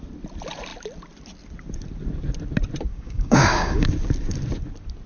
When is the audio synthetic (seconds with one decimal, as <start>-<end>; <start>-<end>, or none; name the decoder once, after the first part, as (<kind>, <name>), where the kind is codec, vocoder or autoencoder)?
2.9-3.9 (codec, DAC)